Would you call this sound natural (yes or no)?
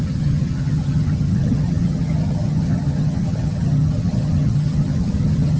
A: no